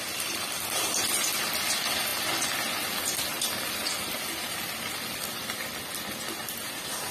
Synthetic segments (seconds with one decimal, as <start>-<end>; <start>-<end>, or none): none